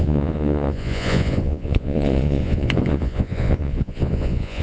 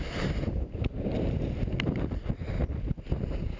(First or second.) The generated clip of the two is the first